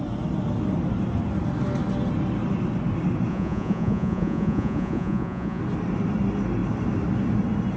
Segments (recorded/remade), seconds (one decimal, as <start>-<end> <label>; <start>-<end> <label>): 0.0-3.3 recorded; 3.3-5.6 remade; 5.6-7.8 recorded